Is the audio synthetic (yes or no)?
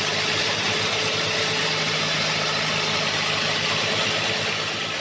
no